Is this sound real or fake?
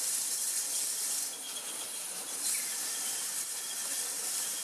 real